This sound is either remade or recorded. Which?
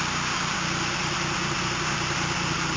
recorded